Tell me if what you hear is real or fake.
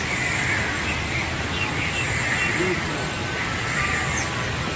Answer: real